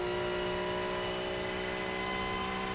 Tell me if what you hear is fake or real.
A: real